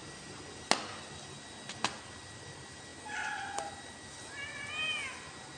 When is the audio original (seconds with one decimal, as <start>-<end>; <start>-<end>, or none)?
0.0-5.6